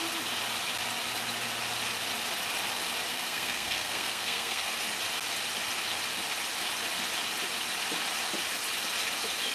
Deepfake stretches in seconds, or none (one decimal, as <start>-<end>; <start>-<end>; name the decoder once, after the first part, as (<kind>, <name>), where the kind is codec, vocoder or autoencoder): 3.1-4.7 (codec, SNAC)